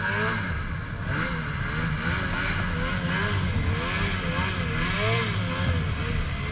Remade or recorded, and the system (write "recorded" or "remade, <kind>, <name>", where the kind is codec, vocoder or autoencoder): recorded